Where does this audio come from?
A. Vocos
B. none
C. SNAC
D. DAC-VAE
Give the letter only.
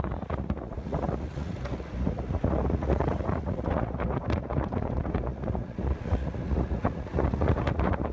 A